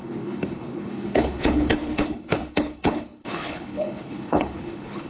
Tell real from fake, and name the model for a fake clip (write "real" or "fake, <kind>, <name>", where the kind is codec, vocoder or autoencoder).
fake, codec, HILCodec